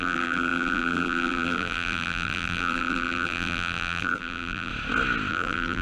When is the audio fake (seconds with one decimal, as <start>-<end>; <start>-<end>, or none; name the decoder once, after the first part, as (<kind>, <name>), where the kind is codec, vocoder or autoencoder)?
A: 0.0-4.7 (vocoder, BigVGAN v2); 5.3-5.8